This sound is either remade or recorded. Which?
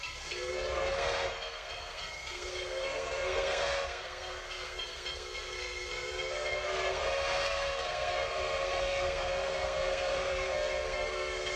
remade